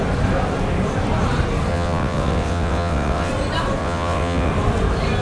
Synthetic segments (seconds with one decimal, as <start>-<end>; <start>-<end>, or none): 1.7-3.3; 3.8-4.5